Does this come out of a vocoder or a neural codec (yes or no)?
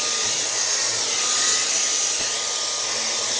no